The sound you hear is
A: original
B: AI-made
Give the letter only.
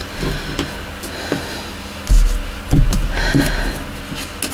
A